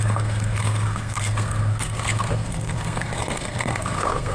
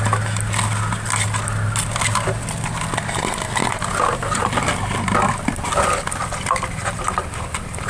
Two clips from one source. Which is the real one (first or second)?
second